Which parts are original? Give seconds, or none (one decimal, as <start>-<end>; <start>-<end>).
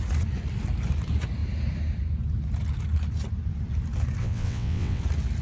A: 0.0-4.2; 5.0-5.4